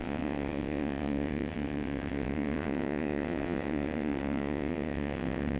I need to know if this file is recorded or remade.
remade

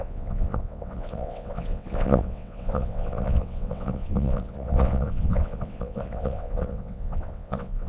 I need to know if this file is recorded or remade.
remade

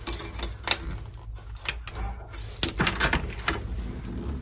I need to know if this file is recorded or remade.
recorded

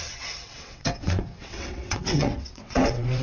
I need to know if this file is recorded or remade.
remade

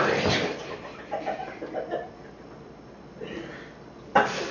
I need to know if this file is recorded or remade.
recorded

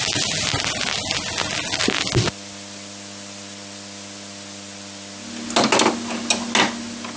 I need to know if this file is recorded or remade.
recorded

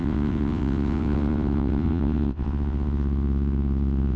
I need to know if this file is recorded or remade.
remade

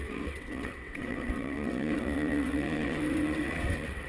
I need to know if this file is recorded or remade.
remade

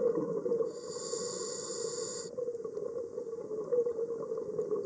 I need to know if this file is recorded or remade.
recorded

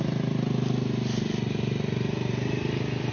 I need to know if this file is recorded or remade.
recorded